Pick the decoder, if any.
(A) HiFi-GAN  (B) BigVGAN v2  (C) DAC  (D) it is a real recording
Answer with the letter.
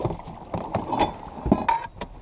D